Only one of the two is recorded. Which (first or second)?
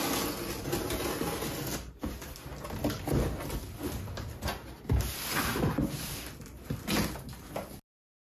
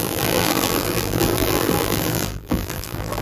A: first